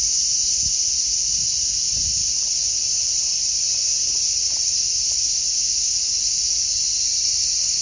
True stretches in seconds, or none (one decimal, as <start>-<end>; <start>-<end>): 0.0-2.2; 3.2-4.6; 5.3-7.8